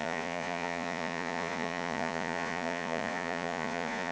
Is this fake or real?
fake